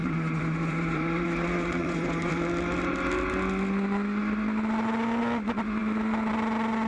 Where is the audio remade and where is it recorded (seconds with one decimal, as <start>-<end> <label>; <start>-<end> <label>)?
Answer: 0.0-2.3 remade; 2.3-6.9 recorded